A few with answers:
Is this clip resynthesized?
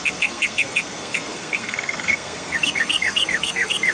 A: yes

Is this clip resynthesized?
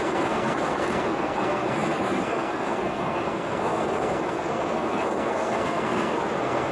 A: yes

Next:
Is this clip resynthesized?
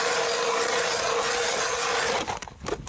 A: no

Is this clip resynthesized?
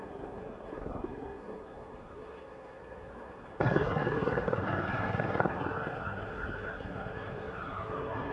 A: yes